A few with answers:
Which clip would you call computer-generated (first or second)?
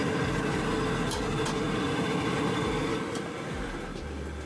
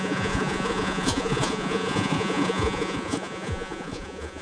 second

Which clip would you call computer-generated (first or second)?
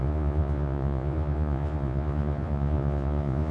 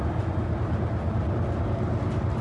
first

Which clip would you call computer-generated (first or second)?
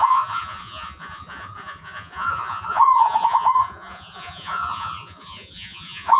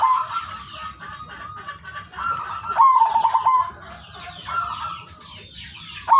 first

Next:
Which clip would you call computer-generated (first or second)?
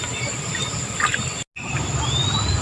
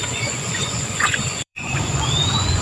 second